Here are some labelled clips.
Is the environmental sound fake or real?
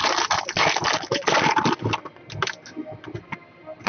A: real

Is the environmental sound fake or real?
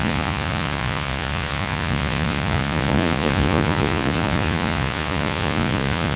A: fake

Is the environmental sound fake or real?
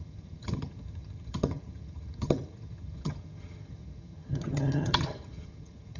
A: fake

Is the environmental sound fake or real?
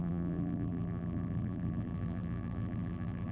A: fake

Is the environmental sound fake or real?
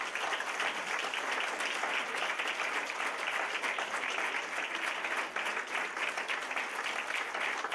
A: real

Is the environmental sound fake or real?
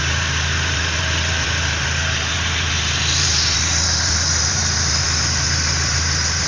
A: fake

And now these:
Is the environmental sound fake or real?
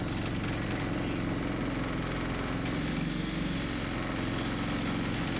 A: real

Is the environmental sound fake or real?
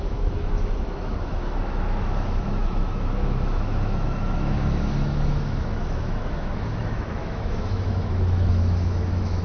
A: fake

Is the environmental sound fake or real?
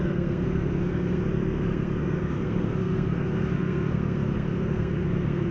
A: fake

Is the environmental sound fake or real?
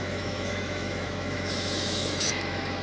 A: fake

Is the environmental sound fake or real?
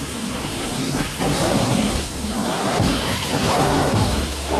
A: fake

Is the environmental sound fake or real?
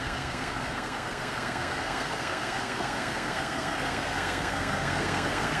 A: fake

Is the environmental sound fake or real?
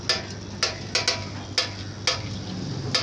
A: real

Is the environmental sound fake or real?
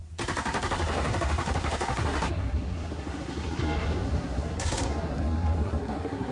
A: fake